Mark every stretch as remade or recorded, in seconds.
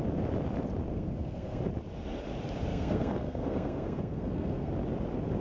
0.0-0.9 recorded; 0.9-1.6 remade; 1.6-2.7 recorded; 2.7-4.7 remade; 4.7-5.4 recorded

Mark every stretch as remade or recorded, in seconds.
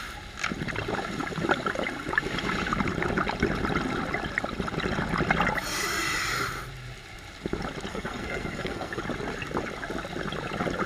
0.0-7.9 recorded; 7.9-9.0 remade; 9.0-10.9 recorded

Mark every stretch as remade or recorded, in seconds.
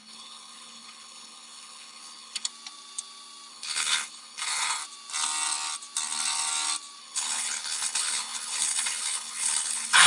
0.0-2.5 remade; 2.5-3.5 recorded; 3.5-4.8 remade; 4.8-7.0 recorded; 7.0-10.1 remade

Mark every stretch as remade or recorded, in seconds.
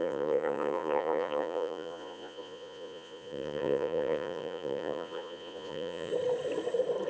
0.0-6.1 remade; 6.1-7.1 recorded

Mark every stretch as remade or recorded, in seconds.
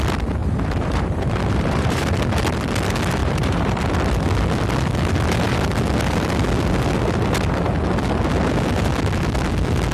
0.0-0.4 recorded; 0.4-2.1 remade; 2.1-3.2 recorded; 3.2-3.8 remade; 3.8-9.9 recorded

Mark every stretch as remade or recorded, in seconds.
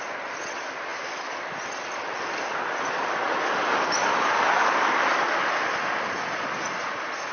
0.0-7.3 recorded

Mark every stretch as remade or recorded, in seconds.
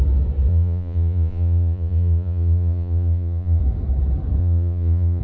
0.0-0.5 recorded; 0.5-3.6 remade; 3.6-4.4 recorded; 4.4-5.2 remade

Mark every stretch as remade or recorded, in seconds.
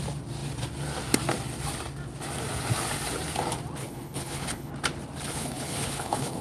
0.0-3.8 recorded; 3.8-4.7 remade; 4.7-5.3 recorded; 5.3-6.4 remade